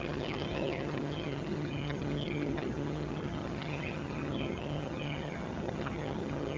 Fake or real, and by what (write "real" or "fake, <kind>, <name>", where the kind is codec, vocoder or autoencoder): fake, vocoder, HiFi-GAN